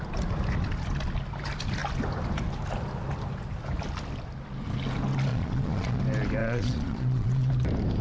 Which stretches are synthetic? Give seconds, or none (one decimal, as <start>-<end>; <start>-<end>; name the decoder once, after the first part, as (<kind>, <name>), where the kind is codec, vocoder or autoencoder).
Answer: 5.3-6.0 (vocoder, Vocos); 6.4-7.5